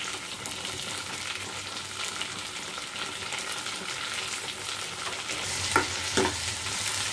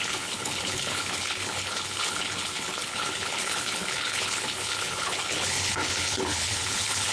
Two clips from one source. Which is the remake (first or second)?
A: second